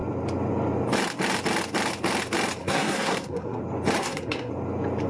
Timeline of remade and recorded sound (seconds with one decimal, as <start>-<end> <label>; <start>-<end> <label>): 0.0-2.6 recorded; 2.6-3.6 remade; 3.6-4.0 recorded; 4.0-4.5 remade; 4.5-5.1 recorded